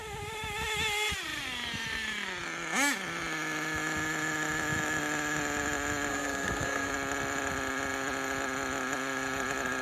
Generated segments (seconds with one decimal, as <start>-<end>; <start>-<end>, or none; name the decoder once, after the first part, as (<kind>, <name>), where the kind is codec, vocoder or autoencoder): 6.1-6.9 (codec, SNAC)